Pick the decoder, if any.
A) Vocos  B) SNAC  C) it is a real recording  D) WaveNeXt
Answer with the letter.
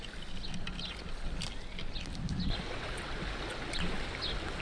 C